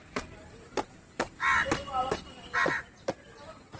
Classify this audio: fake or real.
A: real